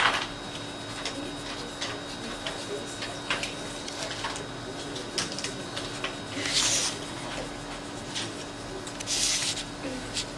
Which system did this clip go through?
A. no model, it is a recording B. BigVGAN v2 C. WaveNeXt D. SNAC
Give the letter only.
A